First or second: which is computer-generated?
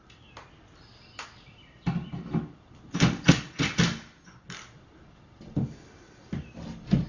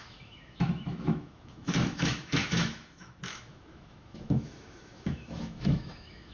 second